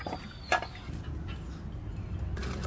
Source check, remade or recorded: recorded